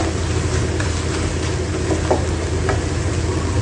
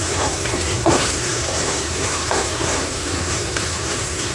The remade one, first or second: second